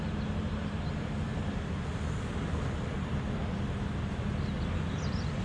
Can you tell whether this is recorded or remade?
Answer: recorded